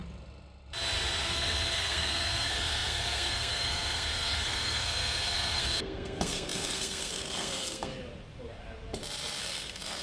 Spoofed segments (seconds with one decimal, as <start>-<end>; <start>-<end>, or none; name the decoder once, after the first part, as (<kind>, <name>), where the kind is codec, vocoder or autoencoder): 1.2-7.9 (codec, SNAC); 9.4-10.0